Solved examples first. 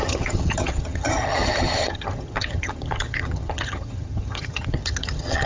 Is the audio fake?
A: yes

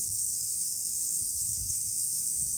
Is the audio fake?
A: yes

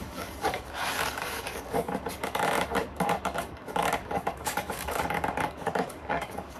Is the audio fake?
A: yes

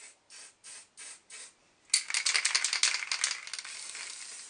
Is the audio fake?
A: no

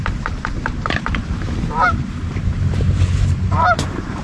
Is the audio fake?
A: yes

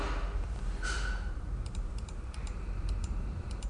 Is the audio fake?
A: yes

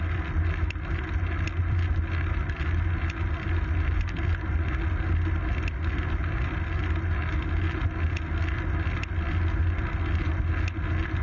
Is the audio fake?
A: no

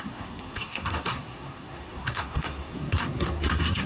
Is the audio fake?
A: yes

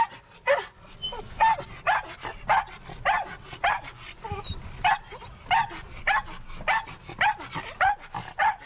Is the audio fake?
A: no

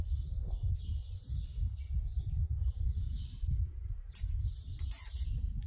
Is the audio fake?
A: no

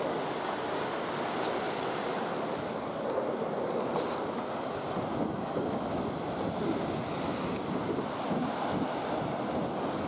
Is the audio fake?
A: no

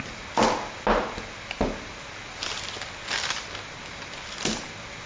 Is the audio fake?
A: no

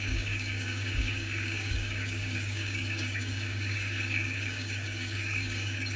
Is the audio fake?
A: yes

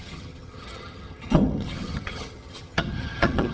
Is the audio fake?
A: yes